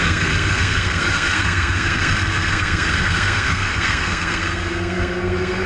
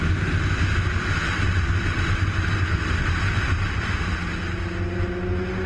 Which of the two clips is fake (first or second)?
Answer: first